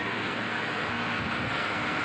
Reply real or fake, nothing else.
fake